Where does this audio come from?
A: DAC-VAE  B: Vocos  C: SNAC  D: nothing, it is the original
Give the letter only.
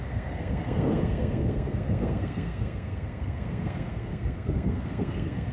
C